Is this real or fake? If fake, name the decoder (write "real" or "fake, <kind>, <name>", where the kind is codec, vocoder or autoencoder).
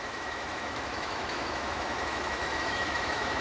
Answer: fake, autoencoder, DAC-VAE